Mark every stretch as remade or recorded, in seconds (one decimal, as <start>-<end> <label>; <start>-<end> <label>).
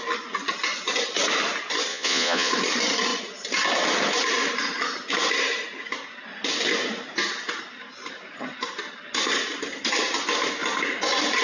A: 0.0-1.9 recorded; 1.9-2.5 remade; 2.5-11.4 recorded